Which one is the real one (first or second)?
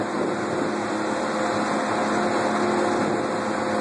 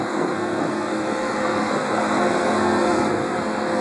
first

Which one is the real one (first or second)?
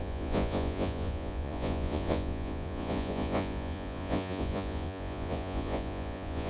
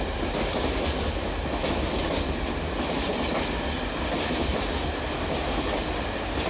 second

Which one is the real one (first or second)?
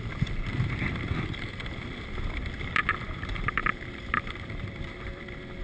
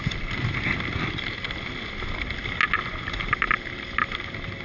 second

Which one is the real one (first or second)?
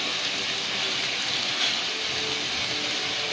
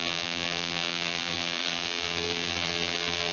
first